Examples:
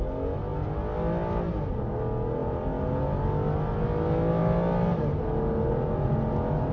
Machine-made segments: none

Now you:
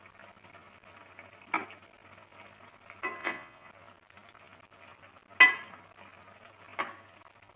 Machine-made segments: 3.2-3.7 (vocoder, Vocos)

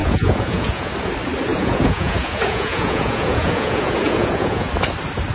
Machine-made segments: 0.0-0.9 (vocoder, Vocos); 1.5-4.7

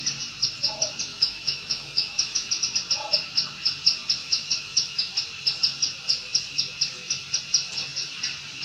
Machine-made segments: 1.1-2.5 (autoencoder, DAC-VAE); 4.2-5.1